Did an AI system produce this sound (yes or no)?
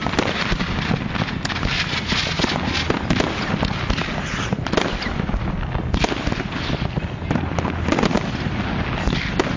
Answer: no